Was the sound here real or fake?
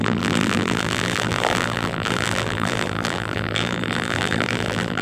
fake